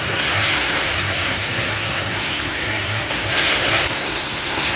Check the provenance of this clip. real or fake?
fake